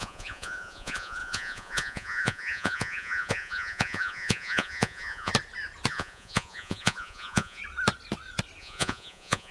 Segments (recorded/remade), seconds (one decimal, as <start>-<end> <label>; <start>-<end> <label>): 0.0-5.3 remade; 5.3-5.9 recorded; 5.9-7.6 remade; 7.6-8.6 recorded; 8.6-9.5 remade